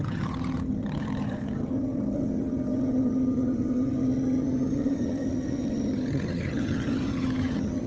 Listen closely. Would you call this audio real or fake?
fake